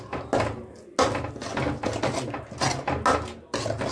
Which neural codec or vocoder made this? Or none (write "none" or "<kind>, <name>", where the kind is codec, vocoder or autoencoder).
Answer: none